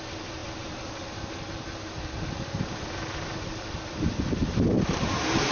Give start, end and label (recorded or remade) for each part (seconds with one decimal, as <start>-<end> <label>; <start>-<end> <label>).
0.0-5.5 recorded